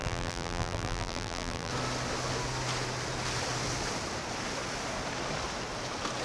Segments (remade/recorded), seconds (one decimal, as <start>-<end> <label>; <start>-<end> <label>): 0.0-1.7 remade; 1.7-6.2 recorded